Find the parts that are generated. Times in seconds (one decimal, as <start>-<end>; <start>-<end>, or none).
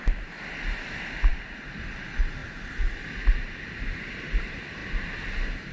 1.3-1.9